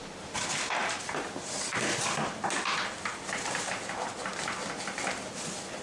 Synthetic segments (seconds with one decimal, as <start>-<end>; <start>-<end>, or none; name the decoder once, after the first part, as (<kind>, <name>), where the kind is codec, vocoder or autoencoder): 0.8-2.2 (vocoder, BigVGAN v2)